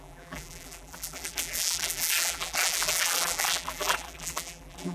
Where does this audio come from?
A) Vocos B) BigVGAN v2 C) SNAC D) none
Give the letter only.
B